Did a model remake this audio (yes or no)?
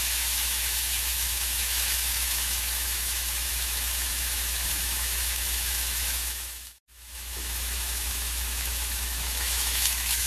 yes